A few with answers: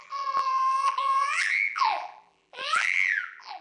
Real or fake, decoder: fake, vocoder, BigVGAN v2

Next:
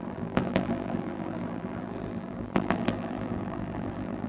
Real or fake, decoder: fake, vocoder, BigVGAN v2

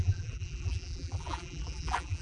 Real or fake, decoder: fake, vocoder, BigVGAN v2